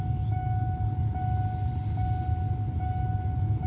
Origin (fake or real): real